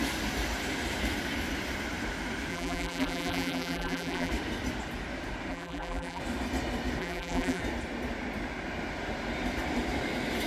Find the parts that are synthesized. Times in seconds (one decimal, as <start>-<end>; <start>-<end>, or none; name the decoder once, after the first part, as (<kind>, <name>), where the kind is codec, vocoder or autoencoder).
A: 2.5-4.3 (vocoder, BigVGAN v2); 5.5-6.2; 7.0-7.6